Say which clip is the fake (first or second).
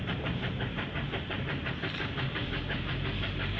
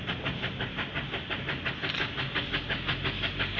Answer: first